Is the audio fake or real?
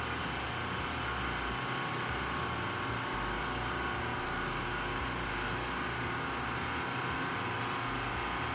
real